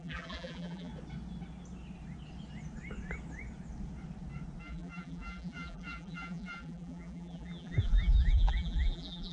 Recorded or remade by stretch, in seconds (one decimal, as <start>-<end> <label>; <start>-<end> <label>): 0.0-0.9 remade; 0.9-4.6 recorded; 4.6-9.3 remade